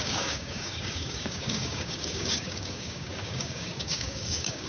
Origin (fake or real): fake